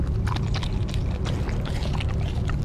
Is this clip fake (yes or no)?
no